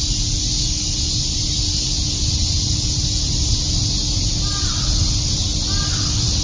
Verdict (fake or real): real